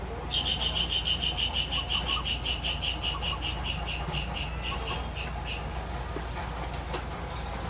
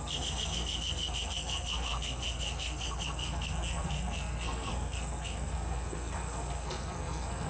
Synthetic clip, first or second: second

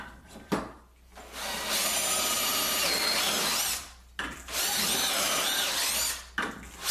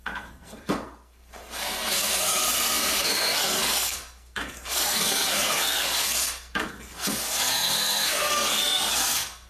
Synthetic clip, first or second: second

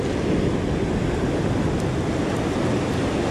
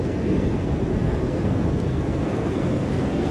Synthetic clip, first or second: second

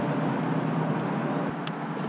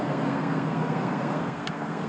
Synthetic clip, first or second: second